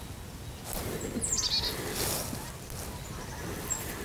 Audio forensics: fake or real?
real